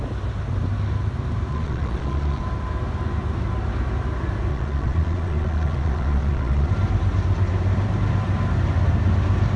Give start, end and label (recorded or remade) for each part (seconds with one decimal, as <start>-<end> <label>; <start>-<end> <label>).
0.0-1.5 recorded; 1.5-2.4 remade; 2.4-4.5 recorded; 4.5-6.7 remade; 6.7-9.6 recorded